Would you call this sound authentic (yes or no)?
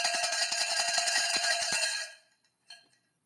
no